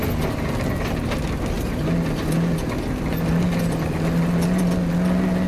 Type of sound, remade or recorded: recorded